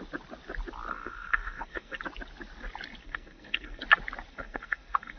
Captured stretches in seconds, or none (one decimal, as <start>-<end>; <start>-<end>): 0.0-0.9; 2.0-3.0; 3.8-4.3